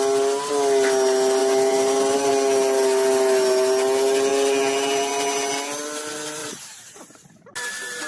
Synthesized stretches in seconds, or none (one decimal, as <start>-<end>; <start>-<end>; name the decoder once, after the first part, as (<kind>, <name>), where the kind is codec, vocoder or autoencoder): 1.4-2.3 (vocoder, BigVGAN v2); 6.4-7.5